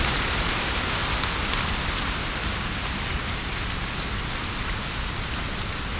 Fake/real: real